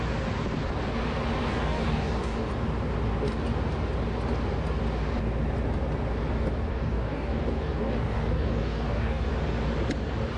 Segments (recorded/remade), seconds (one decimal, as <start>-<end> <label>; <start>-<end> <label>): 0.0-1.5 recorded; 1.5-2.5 remade; 2.5-6.7 recorded; 6.7-9.3 remade; 9.3-10.4 recorded